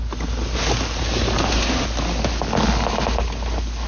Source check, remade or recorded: recorded